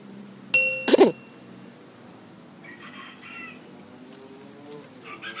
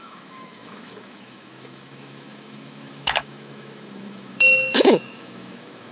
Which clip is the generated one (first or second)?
second